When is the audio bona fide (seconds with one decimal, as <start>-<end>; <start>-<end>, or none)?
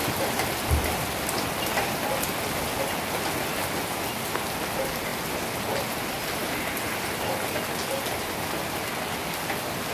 0.0-9.9